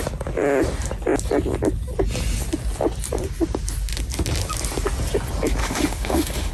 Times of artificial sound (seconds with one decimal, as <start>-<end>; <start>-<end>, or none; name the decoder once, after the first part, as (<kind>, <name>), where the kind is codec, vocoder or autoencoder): 5.6-6.5 (autoencoder, DAC-VAE)